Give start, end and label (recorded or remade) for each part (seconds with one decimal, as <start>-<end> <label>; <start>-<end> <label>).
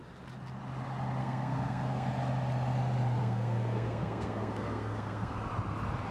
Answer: 0.0-1.2 recorded; 1.2-2.1 remade; 2.1-3.2 recorded; 3.2-5.3 remade; 5.3-6.1 recorded